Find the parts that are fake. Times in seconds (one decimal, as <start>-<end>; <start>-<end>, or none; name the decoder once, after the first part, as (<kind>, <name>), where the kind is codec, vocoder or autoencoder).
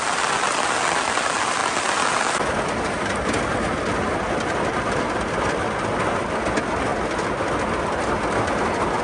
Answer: none